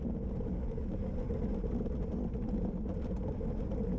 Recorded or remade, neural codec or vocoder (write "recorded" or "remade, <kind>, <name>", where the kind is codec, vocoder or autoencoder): recorded